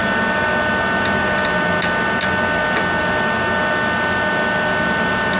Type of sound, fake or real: real